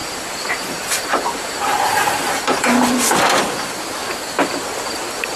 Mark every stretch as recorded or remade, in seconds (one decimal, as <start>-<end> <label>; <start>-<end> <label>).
0.0-3.2 remade; 3.2-5.4 recorded